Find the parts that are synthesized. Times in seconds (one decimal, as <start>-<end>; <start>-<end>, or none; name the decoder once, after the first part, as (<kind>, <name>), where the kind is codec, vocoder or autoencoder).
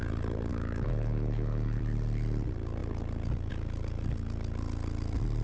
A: 0.5-1.8 (autoencoder, DAC-VAE)